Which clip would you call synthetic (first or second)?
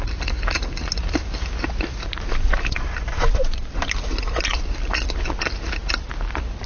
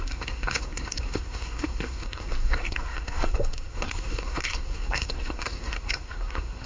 second